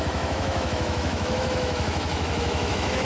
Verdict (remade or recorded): remade